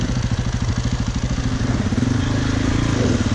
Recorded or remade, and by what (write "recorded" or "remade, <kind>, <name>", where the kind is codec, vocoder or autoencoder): recorded